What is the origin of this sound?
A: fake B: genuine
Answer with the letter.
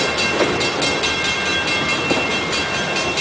B